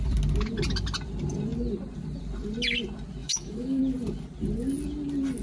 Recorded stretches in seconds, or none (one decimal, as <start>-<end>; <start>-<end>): 0.0-3.2; 3.8-5.4